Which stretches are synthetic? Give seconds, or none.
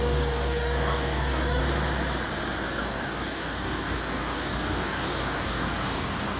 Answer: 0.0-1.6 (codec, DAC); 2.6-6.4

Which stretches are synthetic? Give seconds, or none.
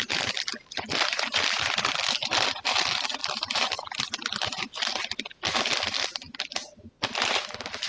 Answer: none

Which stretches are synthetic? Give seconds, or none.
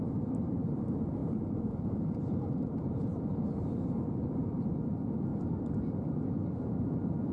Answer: 0.0-5.3 (vocoder, BigVGAN v2); 5.9-7.3